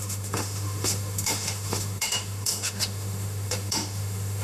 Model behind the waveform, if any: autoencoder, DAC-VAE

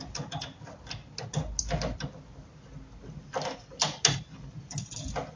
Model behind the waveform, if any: none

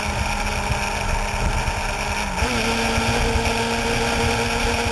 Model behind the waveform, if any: none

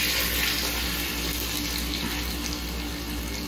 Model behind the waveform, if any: none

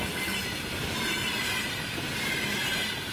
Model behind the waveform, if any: none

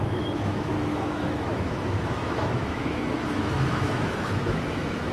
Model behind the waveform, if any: autoencoder, DAC-VAE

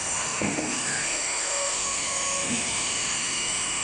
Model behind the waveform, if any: autoencoder, DAC-VAE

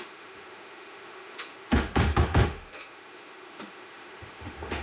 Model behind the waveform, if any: autoencoder, DAC-VAE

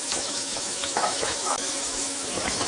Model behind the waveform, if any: autoencoder, DAC-VAE